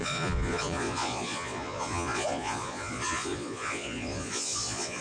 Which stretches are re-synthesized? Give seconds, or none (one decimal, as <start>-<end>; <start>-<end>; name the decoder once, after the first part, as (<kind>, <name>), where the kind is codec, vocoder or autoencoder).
0.0-5.0 (vocoder, Vocos)